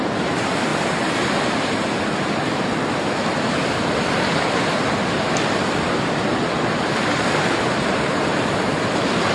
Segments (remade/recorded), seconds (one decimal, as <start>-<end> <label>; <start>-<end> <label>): 0.0-4.3 recorded; 4.3-8.7 remade; 8.7-9.3 recorded